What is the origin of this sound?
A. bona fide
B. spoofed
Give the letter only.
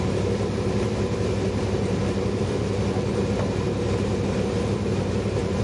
B